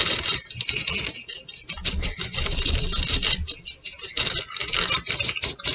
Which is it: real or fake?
real